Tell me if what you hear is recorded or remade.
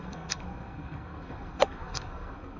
remade